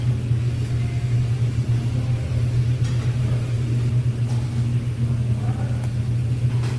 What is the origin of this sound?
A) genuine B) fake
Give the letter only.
A